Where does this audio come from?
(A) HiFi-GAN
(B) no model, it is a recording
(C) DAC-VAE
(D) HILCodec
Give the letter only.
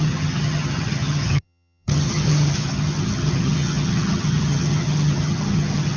A